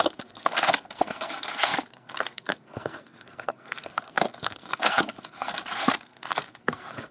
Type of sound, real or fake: fake